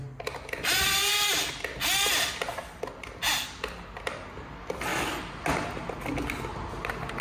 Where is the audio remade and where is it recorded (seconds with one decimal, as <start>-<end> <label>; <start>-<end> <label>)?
0.0-7.2 recorded